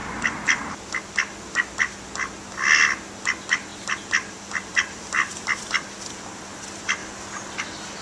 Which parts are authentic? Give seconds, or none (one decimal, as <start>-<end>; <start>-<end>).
0.0-3.7; 6.6-8.0